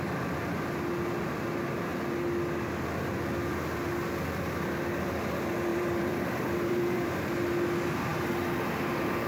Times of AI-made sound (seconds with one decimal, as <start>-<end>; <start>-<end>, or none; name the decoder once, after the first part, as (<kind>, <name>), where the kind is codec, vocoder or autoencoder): 5.7-7.3 (vocoder, BigVGAN v2)